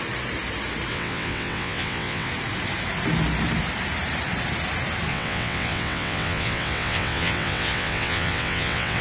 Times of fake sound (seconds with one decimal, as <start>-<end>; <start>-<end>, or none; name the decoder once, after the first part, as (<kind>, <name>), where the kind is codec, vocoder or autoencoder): 0.9-2.3 (vocoder, WaveNeXt); 5.1-9.0